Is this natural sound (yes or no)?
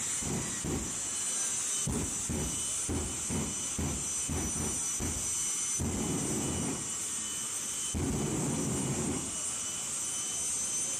yes